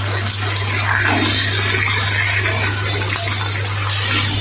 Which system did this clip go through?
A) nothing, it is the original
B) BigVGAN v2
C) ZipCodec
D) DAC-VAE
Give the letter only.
A